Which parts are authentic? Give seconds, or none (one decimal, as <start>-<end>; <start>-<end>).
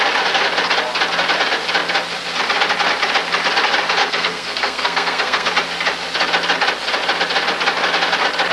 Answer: 0.0-4.0; 5.5-8.5